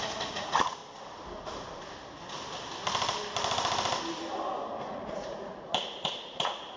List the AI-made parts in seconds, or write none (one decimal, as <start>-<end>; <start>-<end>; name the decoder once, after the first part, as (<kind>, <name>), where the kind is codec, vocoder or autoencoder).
0.0-0.8 (vocoder, Vocos); 4.9-6.8